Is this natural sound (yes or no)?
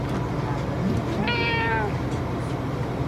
yes